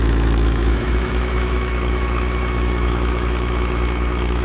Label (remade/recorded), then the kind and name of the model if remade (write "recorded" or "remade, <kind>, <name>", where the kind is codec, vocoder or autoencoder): remade, autoencoder, DAC-VAE